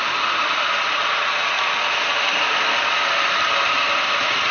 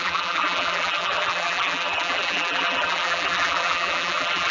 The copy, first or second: second